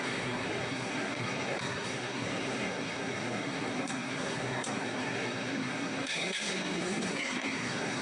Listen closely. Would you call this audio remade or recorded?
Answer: remade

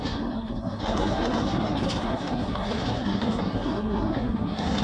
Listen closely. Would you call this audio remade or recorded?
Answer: remade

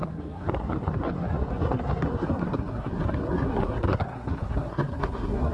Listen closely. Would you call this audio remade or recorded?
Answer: remade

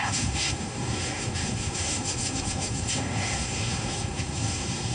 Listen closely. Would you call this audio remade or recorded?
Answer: remade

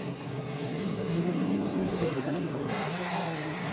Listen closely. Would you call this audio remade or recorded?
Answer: remade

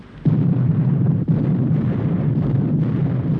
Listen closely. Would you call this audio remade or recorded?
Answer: recorded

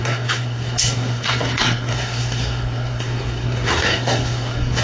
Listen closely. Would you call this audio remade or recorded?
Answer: remade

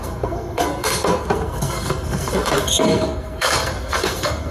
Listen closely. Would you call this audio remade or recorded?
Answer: remade